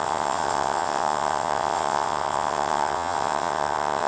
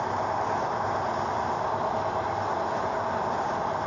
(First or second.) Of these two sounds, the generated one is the first